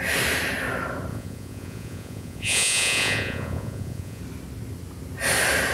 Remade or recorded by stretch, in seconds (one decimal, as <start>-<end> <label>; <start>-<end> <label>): 0.0-1.1 recorded; 1.1-4.2 remade; 4.2-5.7 recorded